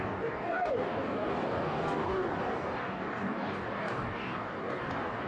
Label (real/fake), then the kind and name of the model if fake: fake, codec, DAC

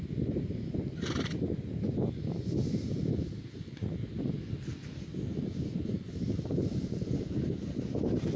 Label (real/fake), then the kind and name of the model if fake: real